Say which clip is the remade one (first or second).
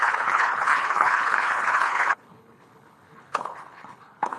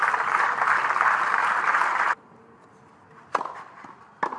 first